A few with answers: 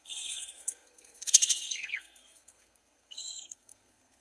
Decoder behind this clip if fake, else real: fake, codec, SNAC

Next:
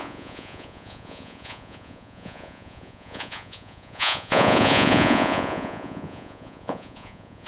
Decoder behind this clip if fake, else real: fake, vocoder, Vocos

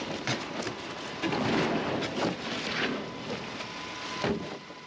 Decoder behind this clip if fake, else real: real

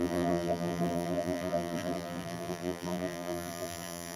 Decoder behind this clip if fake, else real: fake, vocoder, BigVGAN v2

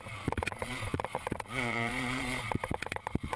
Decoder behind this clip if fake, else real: fake, vocoder, Vocos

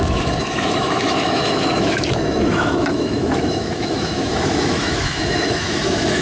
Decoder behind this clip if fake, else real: fake, autoencoder, DAC-VAE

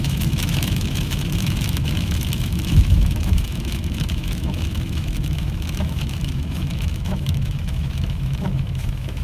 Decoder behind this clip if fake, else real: fake, autoencoder, DAC-VAE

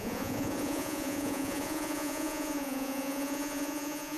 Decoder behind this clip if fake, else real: fake, vocoder, Vocos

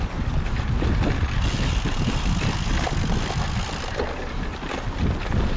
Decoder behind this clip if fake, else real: real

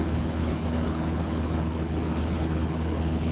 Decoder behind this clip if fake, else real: fake, codec, HILCodec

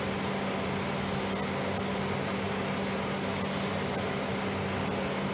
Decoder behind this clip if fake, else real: real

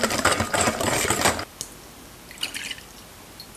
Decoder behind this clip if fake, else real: real